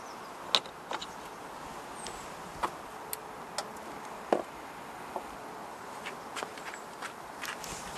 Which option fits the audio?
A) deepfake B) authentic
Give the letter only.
B